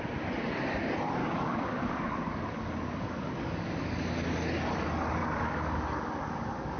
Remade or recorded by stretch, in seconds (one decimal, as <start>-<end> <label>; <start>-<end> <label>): 0.0-1.2 recorded; 1.2-4.0 remade; 4.0-5.2 recorded; 5.2-6.8 remade